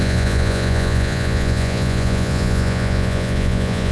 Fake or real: fake